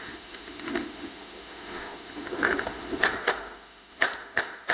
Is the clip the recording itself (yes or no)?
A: no